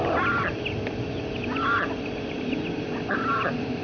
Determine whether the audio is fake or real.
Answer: real